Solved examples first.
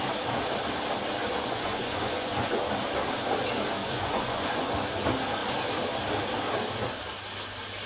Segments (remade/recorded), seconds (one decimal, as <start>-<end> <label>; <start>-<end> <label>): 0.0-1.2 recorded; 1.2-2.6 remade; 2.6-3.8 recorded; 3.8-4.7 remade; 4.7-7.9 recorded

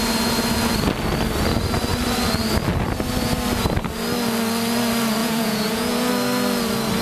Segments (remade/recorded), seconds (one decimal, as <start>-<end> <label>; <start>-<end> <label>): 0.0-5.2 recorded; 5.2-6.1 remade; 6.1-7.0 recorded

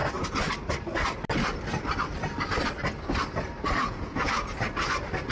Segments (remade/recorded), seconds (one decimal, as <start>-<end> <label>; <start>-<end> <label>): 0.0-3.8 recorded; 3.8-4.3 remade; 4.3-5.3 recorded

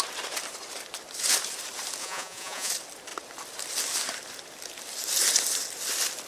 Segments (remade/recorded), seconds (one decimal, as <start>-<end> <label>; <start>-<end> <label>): 0.0-2.0 recorded; 2.0-2.7 remade; 2.7-6.3 recorded